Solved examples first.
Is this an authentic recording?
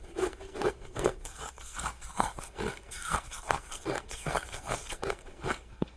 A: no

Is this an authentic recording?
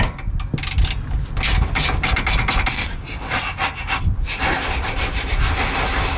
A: yes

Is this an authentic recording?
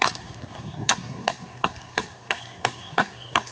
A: no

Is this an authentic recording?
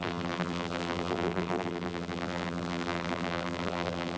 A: no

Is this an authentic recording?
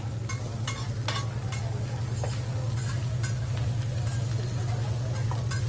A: yes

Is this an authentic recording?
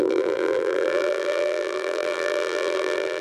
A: no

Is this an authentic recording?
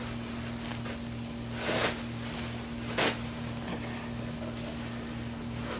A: yes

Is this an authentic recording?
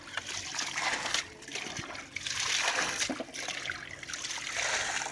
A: yes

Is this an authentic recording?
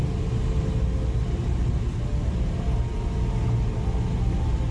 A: yes